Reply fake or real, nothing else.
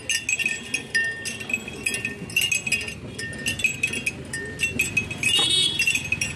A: real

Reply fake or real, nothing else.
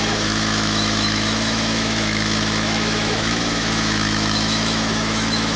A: fake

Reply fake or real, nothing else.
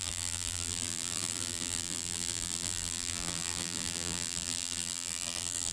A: fake